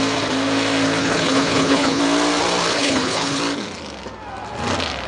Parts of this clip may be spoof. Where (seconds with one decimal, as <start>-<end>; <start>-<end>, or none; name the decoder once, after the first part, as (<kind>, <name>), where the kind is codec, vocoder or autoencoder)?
1.0-2.0 (codec, HILCodec); 2.7-3.4